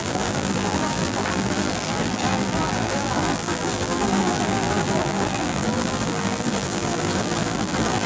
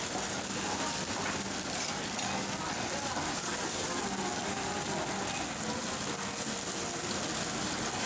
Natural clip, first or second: second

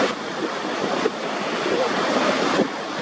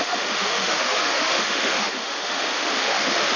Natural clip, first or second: first